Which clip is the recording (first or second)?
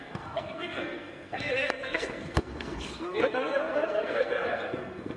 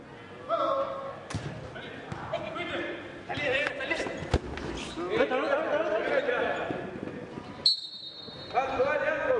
second